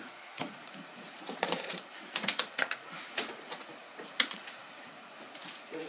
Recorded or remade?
remade